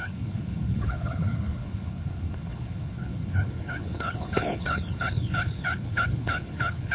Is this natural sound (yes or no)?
no